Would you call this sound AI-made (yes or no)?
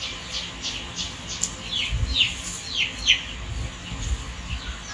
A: no